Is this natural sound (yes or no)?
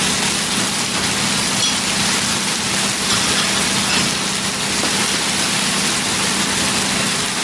yes